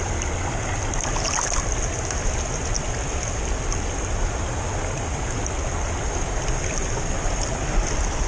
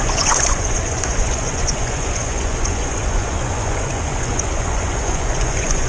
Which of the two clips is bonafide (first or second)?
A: first